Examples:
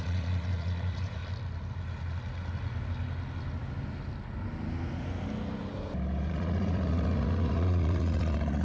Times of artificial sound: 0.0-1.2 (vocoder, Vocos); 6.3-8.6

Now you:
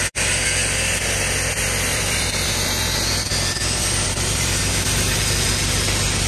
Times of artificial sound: 1.9-5.2 (vocoder, BigVGAN v2)